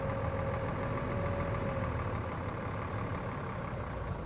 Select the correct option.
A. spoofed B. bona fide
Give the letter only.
B